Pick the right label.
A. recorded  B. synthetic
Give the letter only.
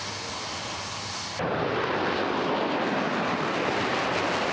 A